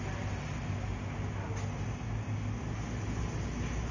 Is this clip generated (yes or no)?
no